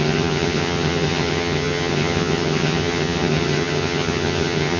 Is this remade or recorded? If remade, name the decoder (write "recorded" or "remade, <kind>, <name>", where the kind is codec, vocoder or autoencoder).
remade, vocoder, HiFi-GAN